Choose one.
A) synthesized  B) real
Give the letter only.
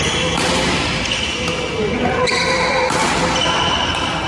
B